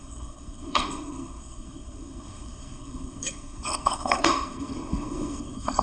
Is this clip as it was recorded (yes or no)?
no